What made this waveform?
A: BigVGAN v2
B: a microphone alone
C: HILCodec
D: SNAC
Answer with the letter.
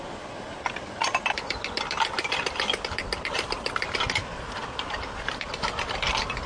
B